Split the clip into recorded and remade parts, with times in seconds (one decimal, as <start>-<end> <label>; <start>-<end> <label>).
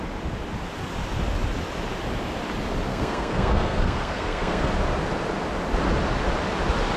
0.0-2.9 recorded; 2.9-4.7 remade; 4.7-7.0 recorded